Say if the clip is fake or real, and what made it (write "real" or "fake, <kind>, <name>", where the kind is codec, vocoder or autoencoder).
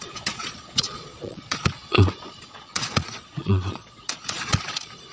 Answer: fake, vocoder, Vocos